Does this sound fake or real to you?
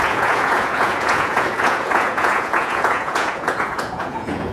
fake